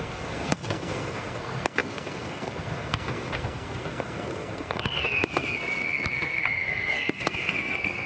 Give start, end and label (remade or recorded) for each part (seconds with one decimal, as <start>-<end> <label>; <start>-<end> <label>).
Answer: 0.0-8.1 remade